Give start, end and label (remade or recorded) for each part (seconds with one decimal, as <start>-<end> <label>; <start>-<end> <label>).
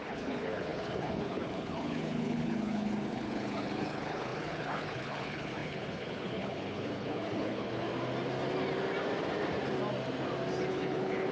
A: 0.0-7.9 remade; 7.9-10.7 recorded; 10.7-11.3 remade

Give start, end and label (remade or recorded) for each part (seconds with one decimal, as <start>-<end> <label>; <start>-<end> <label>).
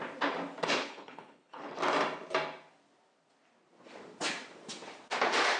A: 0.0-0.8 recorded; 0.8-1.7 remade; 1.7-5.6 recorded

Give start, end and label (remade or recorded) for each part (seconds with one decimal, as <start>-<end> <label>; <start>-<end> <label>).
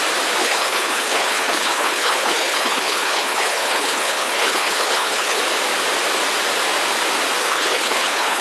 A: 0.0-0.4 recorded; 0.4-5.4 remade; 5.4-7.4 recorded; 7.4-8.4 remade